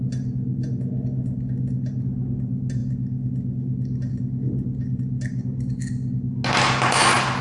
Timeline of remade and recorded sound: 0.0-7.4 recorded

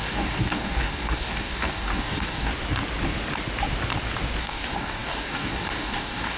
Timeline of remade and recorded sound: 0.0-2.5 remade; 2.5-4.4 recorded; 4.4-6.4 remade

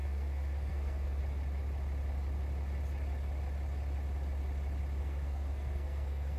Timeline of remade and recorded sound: 0.0-1.2 remade; 1.2-5.0 recorded; 5.0-6.4 remade

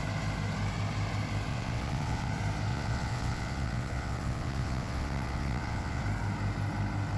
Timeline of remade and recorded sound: 0.0-1.5 recorded; 1.5-2.3 remade; 2.3-2.7 recorded; 2.7-6.0 remade; 6.0-7.2 recorded

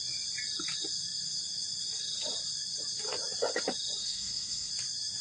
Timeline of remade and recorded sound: 0.0-4.0 recorded; 4.0-4.7 remade; 4.7-5.2 recorded

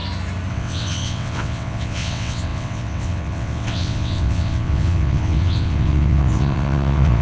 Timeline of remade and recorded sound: 0.0-0.5 recorded; 0.5-7.2 remade